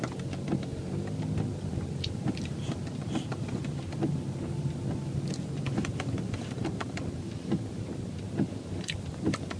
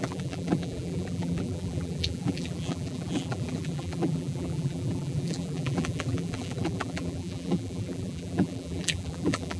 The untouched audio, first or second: first